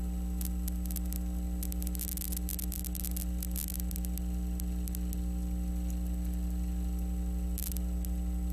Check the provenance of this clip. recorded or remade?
recorded